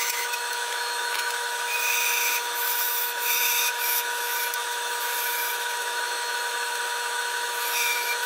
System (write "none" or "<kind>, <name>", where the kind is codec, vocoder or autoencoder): autoencoder, DAC-VAE